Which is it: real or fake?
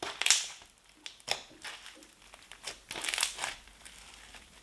real